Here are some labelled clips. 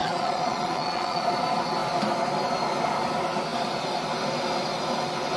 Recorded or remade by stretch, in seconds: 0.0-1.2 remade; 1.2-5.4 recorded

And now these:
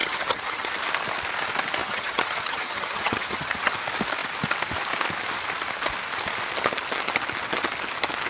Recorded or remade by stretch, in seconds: 0.0-0.7 remade; 0.7-1.8 recorded; 1.8-3.7 remade; 3.7-8.3 recorded

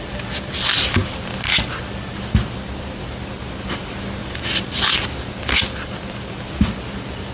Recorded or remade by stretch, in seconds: 0.0-4.2 recorded; 4.2-4.9 remade; 4.9-7.3 recorded

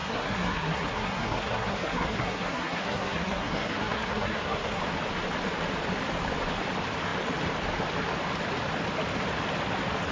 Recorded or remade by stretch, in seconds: 0.0-4.8 remade; 4.8-10.1 recorded

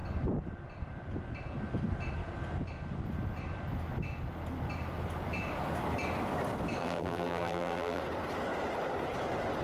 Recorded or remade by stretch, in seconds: 0.0-6.8 recorded; 6.8-8.0 remade; 8.0-9.6 recorded

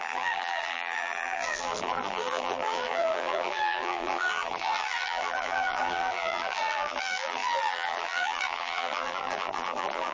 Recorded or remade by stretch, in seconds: 0.0-10.1 remade